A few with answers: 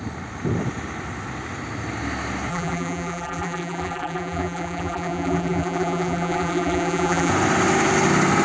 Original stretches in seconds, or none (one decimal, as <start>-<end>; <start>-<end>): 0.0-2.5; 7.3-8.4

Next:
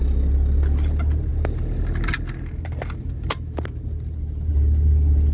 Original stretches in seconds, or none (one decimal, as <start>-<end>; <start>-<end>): 0.0-5.3

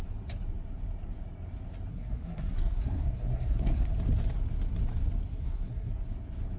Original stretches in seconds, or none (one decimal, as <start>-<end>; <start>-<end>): 0.0-1.9; 3.9-5.3; 5.9-6.6

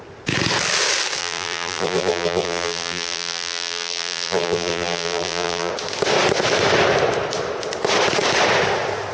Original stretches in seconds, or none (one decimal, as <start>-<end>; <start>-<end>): 0.0-1.2; 5.7-9.1

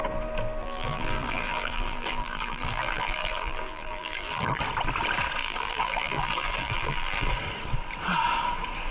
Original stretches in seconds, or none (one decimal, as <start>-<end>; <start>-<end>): 0.0-0.6; 4.6-5.4; 7.3-8.9

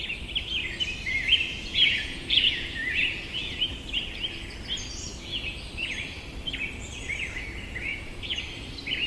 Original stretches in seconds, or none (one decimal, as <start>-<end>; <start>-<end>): 0.0-1.5; 3.6-7.9; 8.4-9.1